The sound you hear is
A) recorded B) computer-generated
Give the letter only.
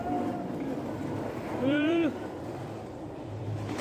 B